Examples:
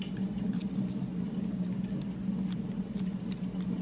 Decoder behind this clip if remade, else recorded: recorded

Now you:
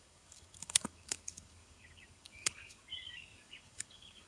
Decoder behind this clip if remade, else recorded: remade, codec, DAC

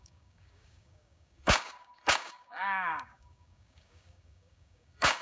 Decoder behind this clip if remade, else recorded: remade, codec, DAC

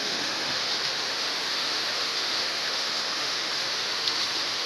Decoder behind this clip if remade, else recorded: remade, autoencoder, DAC-VAE